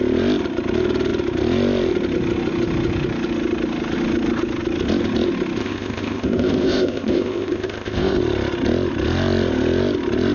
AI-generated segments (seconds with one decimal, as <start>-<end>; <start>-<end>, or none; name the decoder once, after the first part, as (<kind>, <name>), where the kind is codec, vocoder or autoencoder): 5.6-8.2 (codec, ZipCodec)